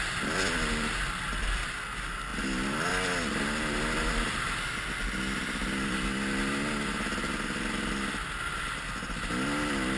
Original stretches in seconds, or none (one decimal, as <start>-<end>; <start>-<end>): 0.0-10.0